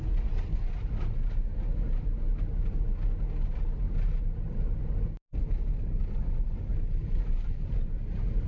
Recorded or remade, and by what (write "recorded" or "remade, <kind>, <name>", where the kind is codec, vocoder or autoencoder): recorded